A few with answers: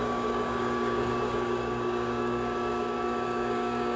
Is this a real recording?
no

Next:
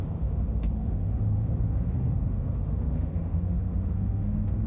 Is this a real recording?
no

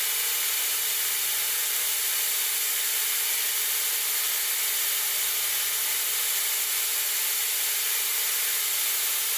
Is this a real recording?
yes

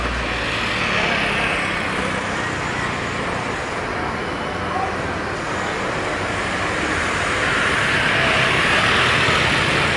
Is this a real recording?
yes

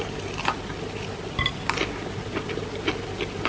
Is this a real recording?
yes